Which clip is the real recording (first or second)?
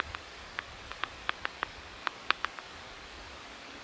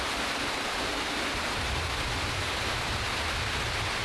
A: second